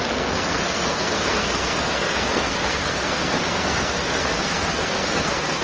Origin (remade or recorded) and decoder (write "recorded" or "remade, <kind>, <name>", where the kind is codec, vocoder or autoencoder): remade, codec, SNAC